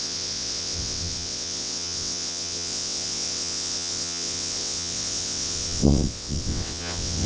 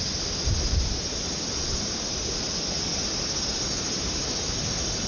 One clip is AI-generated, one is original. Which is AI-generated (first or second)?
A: first